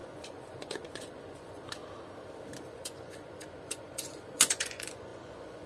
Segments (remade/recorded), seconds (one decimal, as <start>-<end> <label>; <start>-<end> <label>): 0.0-1.8 remade; 1.8-2.6 recorded; 2.6-5.7 remade